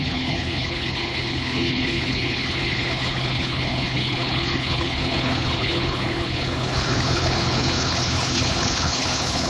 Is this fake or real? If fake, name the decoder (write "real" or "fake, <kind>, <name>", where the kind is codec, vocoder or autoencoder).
fake, codec, HILCodec